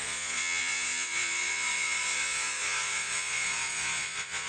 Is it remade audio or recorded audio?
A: remade